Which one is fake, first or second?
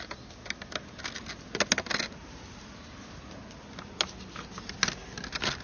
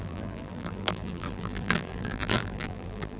second